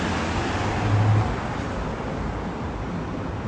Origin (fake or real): real